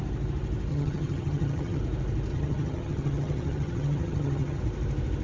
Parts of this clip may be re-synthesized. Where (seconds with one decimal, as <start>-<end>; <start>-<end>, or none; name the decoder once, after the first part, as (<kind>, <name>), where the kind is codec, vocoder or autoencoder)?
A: 0.7-1.8 (vocoder, HiFi-GAN); 2.3-4.6

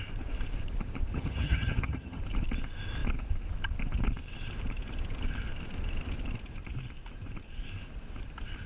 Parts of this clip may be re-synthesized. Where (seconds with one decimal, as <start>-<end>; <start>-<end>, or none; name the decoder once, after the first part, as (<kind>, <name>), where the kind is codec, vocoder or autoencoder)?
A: 1.1-2.2 (vocoder, HiFi-GAN)